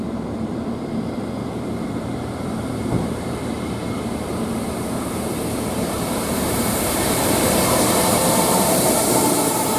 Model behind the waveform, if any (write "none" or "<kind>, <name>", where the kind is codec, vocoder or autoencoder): vocoder, BigVGAN v2